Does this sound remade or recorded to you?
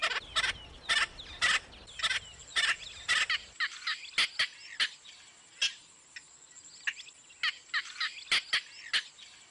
recorded